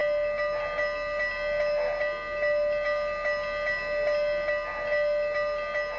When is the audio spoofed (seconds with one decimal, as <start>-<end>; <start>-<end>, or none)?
none